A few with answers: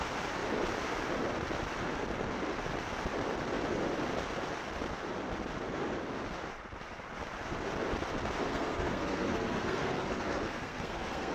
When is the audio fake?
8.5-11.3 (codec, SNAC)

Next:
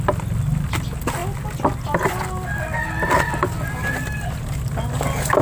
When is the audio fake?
none

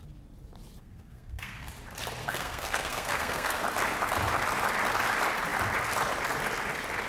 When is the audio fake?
0.8-1.7 (codec, SNAC); 2.2-3.6

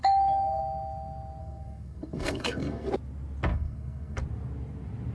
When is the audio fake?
0.0-0.6 (codec, SNAC); 1.4-2.9; 3.5-4.2

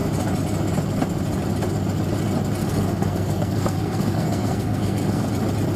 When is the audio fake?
2.6-5.3 (codec, SNAC)

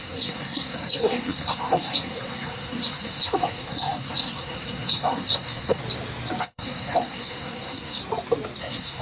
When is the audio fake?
0.0-5.8 (codec, SNAC); 6.4-8.0; 8.6-9.0

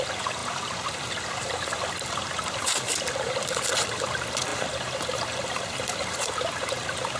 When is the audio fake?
none